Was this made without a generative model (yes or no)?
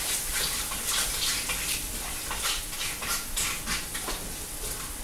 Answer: yes